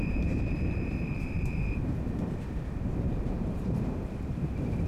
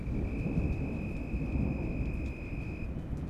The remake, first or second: first